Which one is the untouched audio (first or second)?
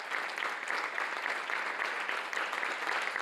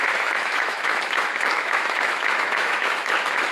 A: first